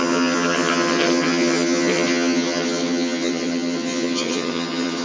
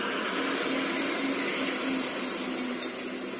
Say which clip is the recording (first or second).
second